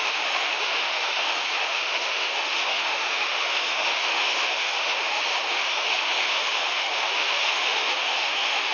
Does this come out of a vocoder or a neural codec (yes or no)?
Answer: yes